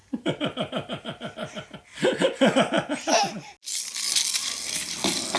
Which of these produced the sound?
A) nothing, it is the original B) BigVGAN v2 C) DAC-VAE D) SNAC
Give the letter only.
A